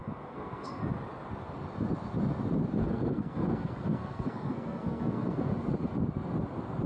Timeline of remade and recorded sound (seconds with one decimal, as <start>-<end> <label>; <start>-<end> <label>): 0.0-0.8 remade; 0.8-2.8 recorded; 2.8-5.5 remade; 5.5-6.9 recorded